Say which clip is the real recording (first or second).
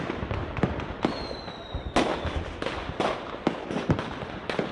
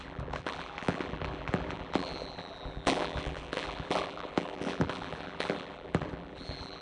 first